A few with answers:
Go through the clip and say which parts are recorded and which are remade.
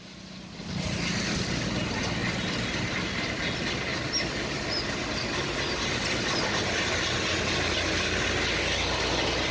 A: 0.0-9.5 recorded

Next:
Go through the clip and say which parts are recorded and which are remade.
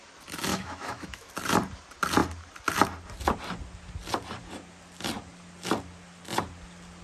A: 0.0-0.5 recorded; 0.5-1.3 remade; 1.3-7.0 recorded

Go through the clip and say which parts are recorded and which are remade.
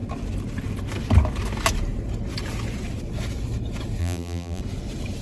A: 0.0-4.0 recorded; 4.0-4.6 remade; 4.6-5.2 recorded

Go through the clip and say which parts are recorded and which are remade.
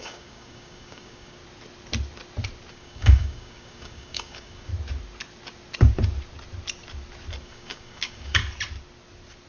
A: 0.0-1.4 remade; 1.4-2.7 recorded; 2.7-4.7 remade; 4.7-7.4 recorded; 7.4-8.4 remade; 8.4-9.5 recorded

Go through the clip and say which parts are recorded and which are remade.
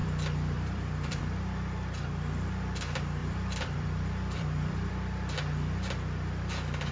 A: 0.0-1.2 remade; 1.2-3.2 recorded; 3.2-4.9 remade; 4.9-6.9 recorded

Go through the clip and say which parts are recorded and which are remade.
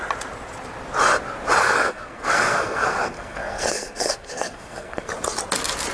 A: 0.0-1.6 recorded; 1.6-5.1 remade; 5.1-5.9 recorded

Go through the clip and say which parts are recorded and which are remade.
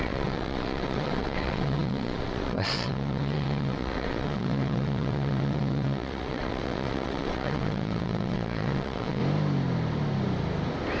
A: 0.0-9.2 remade; 9.2-11.0 recorded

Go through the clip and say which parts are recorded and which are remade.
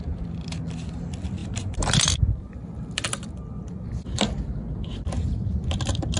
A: 0.0-1.4 recorded; 1.4-4.9 remade; 4.9-6.2 recorded